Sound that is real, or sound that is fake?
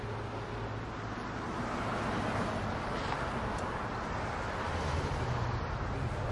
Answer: real